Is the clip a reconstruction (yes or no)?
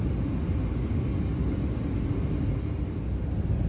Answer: no